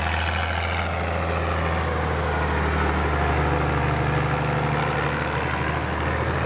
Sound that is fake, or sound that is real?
real